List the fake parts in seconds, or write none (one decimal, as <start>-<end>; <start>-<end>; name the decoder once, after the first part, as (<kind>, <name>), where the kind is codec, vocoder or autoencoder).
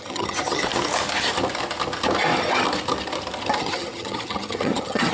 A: 0.0-0.6 (vocoder, HiFi-GAN); 3.6-5.1